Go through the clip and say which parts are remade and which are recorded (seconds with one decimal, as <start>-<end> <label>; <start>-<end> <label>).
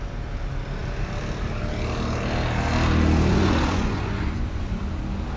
0.0-3.3 recorded; 3.3-4.8 remade; 4.8-5.4 recorded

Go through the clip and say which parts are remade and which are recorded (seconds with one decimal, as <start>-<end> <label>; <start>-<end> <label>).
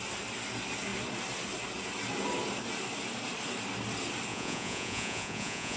0.0-4.3 recorded; 4.3-5.8 remade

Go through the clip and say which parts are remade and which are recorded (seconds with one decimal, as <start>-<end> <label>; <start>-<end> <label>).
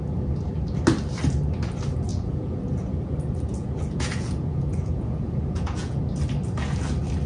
0.0-2.1 recorded; 2.1-6.0 remade; 6.0-7.3 recorded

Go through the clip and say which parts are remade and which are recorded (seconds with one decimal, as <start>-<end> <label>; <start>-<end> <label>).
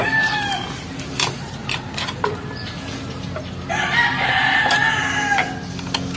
0.0-6.2 recorded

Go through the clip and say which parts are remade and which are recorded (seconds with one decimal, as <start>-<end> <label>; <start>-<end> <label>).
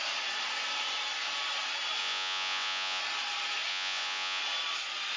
0.0-2.0 recorded; 2.0-3.0 remade; 3.0-3.7 recorded; 3.7-4.4 remade; 4.4-5.2 recorded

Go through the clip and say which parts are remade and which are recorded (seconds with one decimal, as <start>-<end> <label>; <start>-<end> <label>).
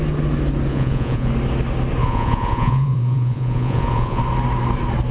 0.0-0.7 recorded; 0.7-1.3 remade; 1.3-2.0 recorded; 2.0-4.2 remade; 4.2-5.1 recorded